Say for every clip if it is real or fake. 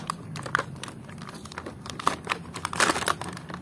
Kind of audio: fake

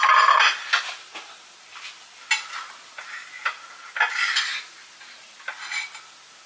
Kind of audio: real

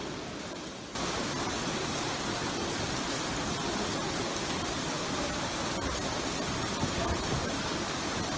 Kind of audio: real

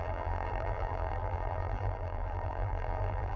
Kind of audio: fake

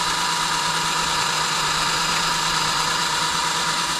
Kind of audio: fake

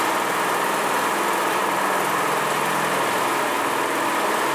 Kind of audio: real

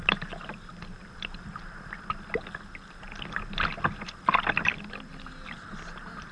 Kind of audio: real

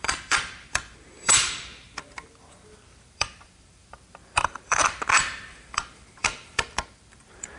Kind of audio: fake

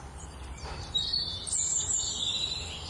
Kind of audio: fake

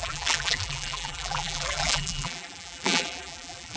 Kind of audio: fake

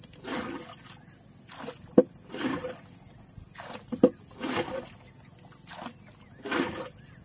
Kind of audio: real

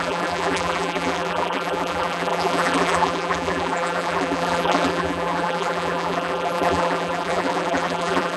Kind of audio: fake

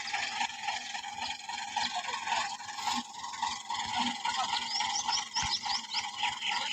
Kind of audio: real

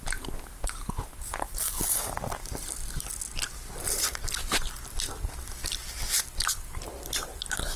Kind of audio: real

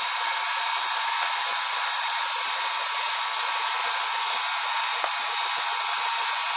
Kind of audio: real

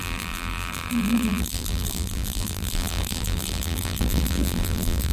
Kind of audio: fake